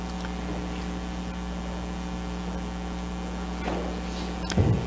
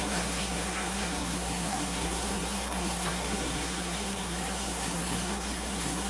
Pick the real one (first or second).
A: first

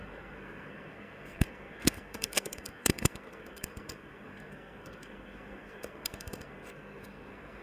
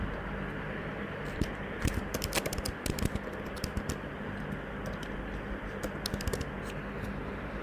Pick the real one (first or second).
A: second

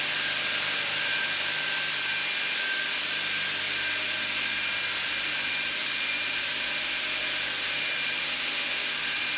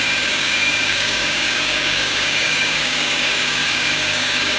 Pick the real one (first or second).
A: first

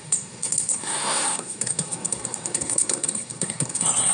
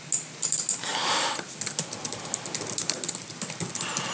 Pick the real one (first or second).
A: second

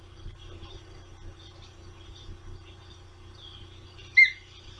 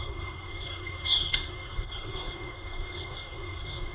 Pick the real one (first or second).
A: first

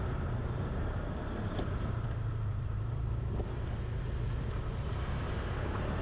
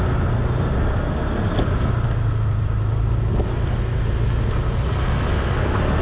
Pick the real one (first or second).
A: second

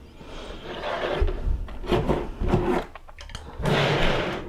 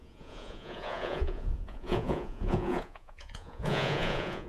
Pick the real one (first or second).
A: first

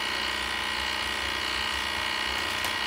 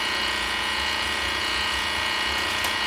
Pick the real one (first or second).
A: first